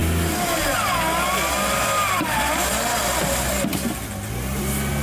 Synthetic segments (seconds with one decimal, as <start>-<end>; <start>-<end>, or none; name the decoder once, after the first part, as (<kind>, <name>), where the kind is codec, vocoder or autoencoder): none